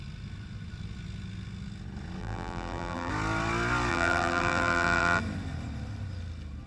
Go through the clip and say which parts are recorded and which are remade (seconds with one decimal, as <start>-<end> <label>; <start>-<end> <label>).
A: 0.0-2.2 recorded; 2.2-3.1 remade; 3.1-3.9 recorded; 3.9-5.2 remade; 5.2-6.7 recorded